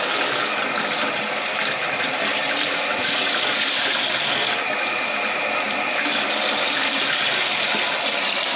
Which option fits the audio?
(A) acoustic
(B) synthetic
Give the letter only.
A